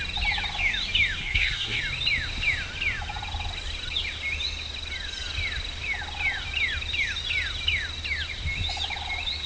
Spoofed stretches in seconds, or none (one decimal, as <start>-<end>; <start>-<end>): 1.2-1.8